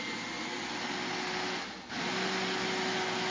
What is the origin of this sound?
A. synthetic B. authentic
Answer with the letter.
B